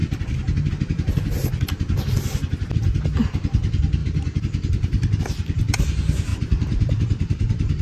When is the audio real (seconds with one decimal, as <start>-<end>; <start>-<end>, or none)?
0.0-4.0; 5.2-6.3

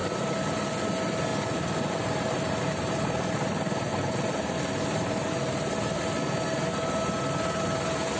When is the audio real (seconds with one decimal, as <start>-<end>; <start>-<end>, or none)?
0.8-1.3; 2.5-3.9; 5.8-8.2

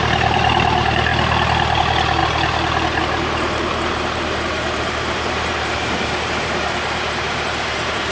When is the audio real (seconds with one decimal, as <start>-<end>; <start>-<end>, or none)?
1.1-1.8; 2.2-3.0

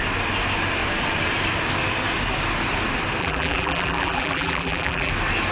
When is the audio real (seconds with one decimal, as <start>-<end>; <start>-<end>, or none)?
0.0-3.2; 5.1-5.5

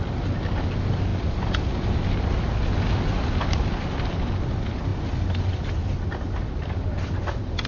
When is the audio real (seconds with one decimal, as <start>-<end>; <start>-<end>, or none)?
0.0-7.7